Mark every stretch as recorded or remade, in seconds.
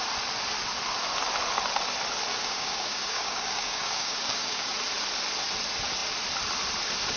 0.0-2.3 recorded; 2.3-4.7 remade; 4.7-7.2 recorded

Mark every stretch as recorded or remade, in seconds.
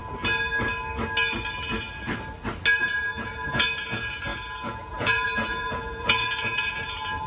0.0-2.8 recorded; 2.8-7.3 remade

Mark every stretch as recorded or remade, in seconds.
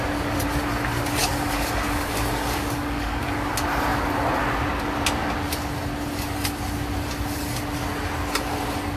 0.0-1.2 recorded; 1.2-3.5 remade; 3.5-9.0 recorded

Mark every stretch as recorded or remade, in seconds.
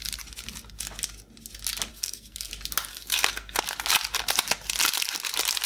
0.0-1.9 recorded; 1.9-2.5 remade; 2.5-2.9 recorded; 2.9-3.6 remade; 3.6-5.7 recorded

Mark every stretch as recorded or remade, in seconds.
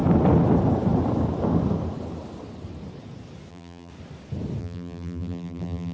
0.0-3.5 recorded; 3.5-3.9 remade; 3.9-4.6 recorded; 4.6-5.9 remade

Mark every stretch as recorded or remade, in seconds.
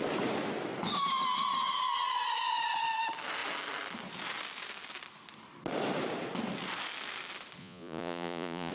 0.0-7.6 recorded; 7.6-8.7 remade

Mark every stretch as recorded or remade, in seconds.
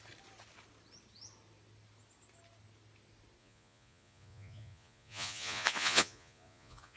0.0-3.4 recorded; 3.4-7.0 remade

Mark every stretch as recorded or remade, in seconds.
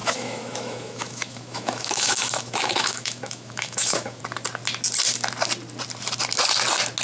0.0-4.2 remade; 4.2-7.0 recorded